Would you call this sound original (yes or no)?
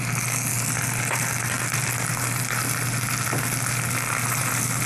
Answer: yes